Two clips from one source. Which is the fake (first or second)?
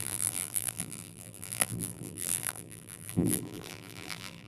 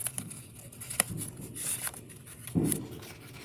first